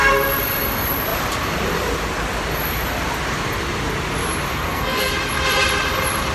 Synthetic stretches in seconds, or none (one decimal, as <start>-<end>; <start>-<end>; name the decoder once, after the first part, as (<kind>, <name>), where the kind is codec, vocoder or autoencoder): 4.5-5.1 (codec, SNAC)